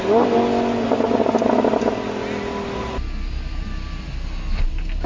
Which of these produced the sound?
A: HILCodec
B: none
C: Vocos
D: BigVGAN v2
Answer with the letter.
B